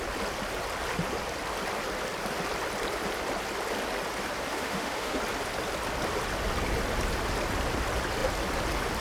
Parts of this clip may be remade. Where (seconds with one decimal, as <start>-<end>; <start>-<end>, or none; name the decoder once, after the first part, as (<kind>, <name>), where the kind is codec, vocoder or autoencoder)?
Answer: 4.5-5.2 (autoencoder, DAC-VAE)